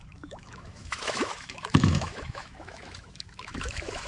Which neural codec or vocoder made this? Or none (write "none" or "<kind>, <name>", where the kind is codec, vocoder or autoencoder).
autoencoder, DAC-VAE